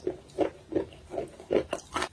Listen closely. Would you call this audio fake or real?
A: real